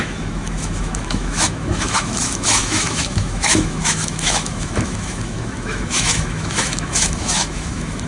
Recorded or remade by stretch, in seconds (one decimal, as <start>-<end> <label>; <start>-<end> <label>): 0.0-8.1 remade